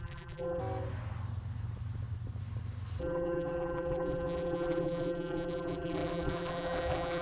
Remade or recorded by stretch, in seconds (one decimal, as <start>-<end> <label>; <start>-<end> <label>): 0.0-0.6 remade; 0.6-3.0 recorded; 3.0-7.2 remade